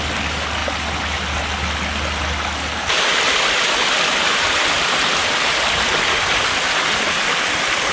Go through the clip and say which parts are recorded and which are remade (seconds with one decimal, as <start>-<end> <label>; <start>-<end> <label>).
0.0-7.9 recorded